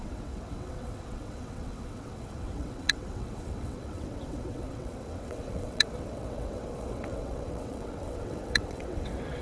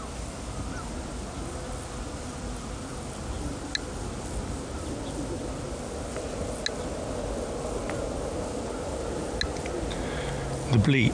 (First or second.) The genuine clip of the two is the second